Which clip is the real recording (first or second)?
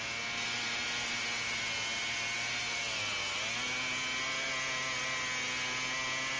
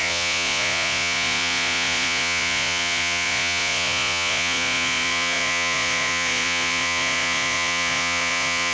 first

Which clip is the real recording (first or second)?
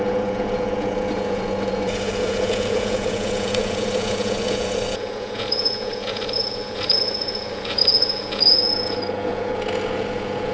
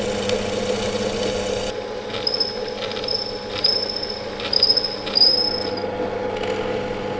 second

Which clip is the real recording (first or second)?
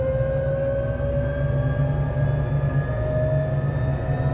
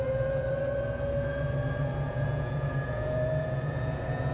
first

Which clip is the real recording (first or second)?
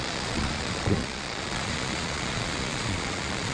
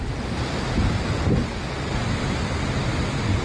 second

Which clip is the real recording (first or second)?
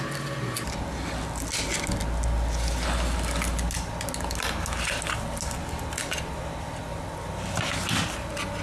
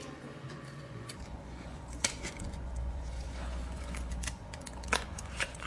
first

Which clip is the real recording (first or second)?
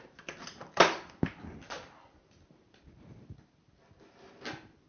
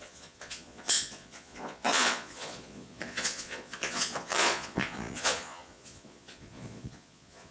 first